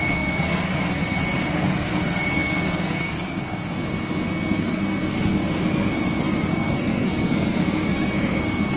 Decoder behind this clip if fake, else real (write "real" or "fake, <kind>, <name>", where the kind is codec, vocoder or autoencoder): fake, codec, SNAC